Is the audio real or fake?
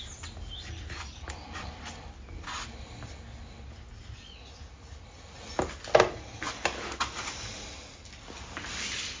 real